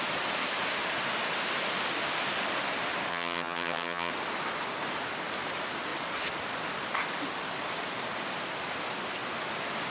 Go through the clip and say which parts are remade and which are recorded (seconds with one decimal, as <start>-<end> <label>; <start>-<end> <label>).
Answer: 0.0-3.1 recorded; 3.1-4.1 remade; 4.1-9.9 recorded